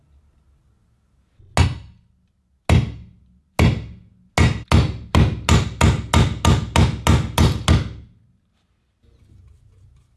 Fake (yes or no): no